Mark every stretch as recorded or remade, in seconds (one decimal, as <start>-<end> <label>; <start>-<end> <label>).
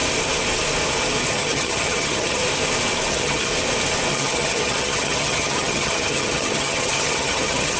0.0-1.3 recorded; 1.3-2.4 remade; 2.4-3.1 recorded; 3.1-3.5 remade; 3.5-4.1 recorded; 4.1-7.8 remade